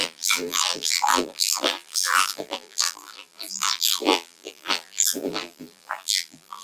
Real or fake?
fake